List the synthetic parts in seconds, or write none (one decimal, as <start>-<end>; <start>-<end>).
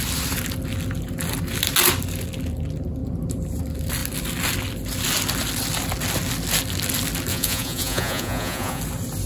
7.3-8.8